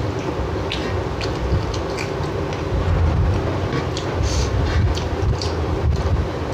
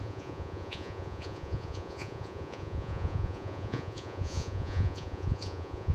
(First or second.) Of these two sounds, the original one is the first